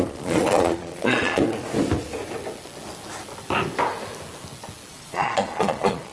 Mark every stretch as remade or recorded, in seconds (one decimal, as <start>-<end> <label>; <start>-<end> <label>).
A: 0.0-1.6 remade; 1.6-4.9 recorded; 4.9-6.1 remade

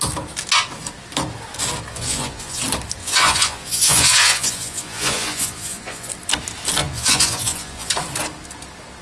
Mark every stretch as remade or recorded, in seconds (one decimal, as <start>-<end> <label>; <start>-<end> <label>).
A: 0.0-1.9 recorded; 1.9-2.6 remade; 2.6-3.0 recorded; 3.0-6.1 remade; 6.1-6.8 recorded; 6.8-7.9 remade; 7.9-9.0 recorded

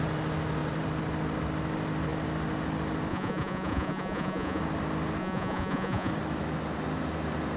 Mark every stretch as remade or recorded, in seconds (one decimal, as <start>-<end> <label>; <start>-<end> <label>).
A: 0.0-3.1 recorded; 3.1-4.6 remade; 4.6-5.2 recorded; 5.2-6.1 remade; 6.1-7.6 recorded

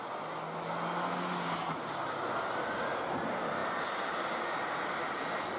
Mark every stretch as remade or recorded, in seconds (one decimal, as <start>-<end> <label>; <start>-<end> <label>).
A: 0.0-5.6 recorded

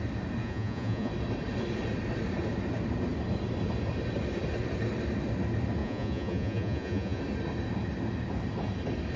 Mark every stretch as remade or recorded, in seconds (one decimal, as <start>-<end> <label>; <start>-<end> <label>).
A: 0.0-0.4 recorded; 0.4-1.1 remade; 1.1-5.8 recorded; 5.8-7.2 remade; 7.2-9.2 recorded

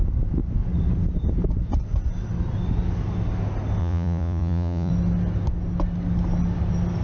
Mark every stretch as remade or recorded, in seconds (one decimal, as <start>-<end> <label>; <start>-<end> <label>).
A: 0.0-3.8 recorded; 3.8-4.9 remade; 4.9-7.0 recorded

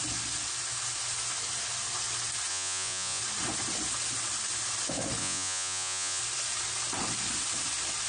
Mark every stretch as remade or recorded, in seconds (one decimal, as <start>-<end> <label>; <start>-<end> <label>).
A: 0.0-2.5 recorded; 2.5-3.2 remade; 3.2-5.2 recorded; 5.2-6.2 remade; 6.2-8.1 recorded